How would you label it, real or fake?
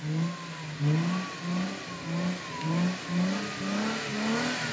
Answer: real